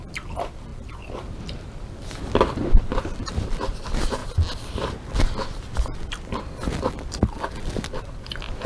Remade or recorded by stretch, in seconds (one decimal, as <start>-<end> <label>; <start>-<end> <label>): 0.0-4.2 remade; 4.2-6.9 recorded; 6.9-8.7 remade